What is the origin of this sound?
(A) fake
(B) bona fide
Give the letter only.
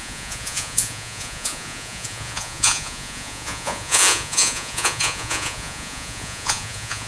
A